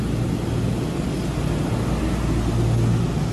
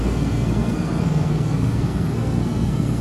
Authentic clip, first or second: first